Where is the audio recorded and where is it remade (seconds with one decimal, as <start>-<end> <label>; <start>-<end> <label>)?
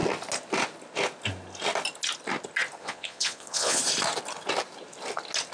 0.0-2.8 recorded; 2.8-3.8 remade; 3.8-5.5 recorded